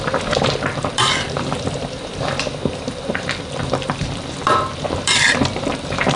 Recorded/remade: remade